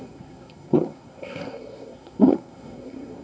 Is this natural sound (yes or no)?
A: no